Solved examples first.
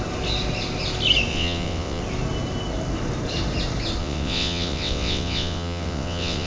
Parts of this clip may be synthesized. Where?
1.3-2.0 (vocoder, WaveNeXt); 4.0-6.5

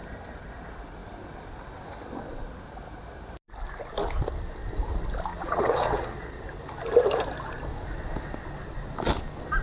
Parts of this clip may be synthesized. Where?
5.3-6.4 (vocoder, WaveNeXt)

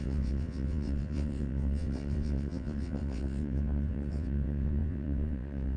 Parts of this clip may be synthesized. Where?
0.0-5.8 (vocoder, WaveNeXt)

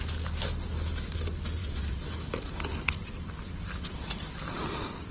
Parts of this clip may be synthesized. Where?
1.6-2.1 (vocoder, WaveNeXt)

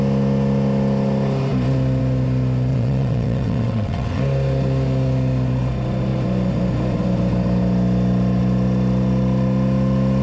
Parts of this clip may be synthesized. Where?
2.7-4.2 (vocoder, WaveNeXt)

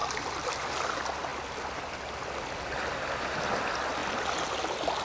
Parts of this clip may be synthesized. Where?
none